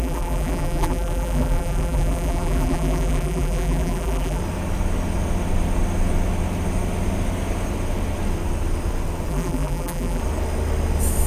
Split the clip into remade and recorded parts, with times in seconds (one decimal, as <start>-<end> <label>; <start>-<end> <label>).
0.0-4.4 remade; 4.4-9.3 recorded; 9.3-10.2 remade; 10.2-11.3 recorded